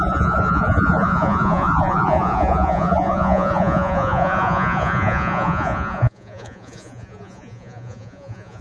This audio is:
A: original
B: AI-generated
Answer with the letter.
B